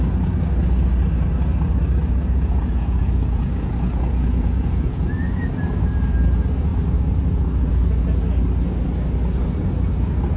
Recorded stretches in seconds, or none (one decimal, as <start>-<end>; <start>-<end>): 0.0-2.0; 5.0-10.4